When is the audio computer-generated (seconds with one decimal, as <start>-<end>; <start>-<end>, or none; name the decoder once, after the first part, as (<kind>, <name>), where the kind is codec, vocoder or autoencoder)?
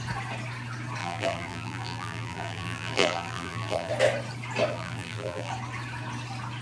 1.0-3.9 (vocoder, BigVGAN v2); 4.7-5.5